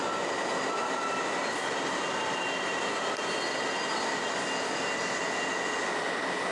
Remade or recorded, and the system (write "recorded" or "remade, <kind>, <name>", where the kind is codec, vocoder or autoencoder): recorded